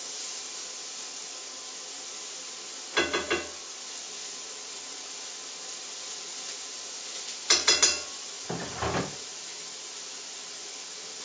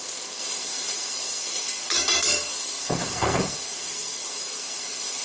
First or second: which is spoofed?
second